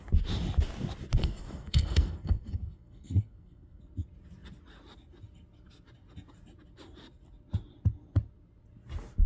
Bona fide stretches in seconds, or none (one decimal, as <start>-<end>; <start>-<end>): 0.0-1.2; 3.8-9.3